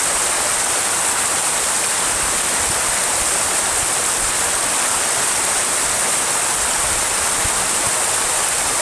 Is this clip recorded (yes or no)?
yes